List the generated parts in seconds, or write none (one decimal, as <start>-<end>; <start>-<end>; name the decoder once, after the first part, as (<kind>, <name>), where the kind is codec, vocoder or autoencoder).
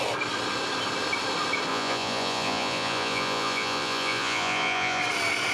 1.7-5.0 (vocoder, Vocos)